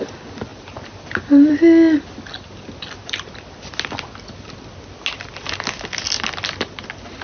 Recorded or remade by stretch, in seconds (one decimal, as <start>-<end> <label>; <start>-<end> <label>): 0.0-7.2 recorded